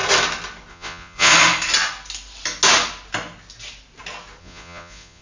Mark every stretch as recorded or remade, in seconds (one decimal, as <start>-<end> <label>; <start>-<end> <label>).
0.0-0.7 recorded; 0.7-1.3 remade; 1.3-4.4 recorded; 4.4-5.2 remade